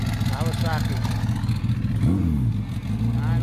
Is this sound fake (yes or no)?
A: no